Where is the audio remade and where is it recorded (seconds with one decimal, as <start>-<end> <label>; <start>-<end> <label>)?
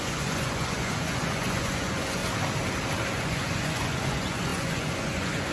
0.0-2.2 remade; 2.2-3.1 recorded; 3.1-5.5 remade